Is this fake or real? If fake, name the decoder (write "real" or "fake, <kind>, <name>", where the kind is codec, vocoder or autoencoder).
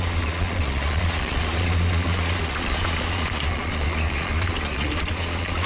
fake, vocoder, Vocos